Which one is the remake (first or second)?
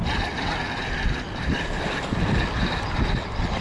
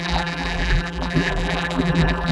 second